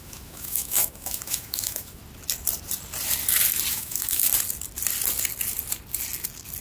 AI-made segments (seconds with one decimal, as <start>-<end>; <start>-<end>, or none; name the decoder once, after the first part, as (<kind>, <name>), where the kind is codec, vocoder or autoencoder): 0.0-2.0 (autoencoder, DAC-VAE); 3.7-4.3